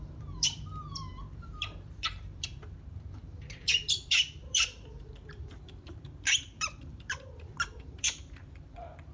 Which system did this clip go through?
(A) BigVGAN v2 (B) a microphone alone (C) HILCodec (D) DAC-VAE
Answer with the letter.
A